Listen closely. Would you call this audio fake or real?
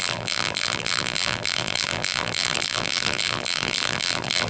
fake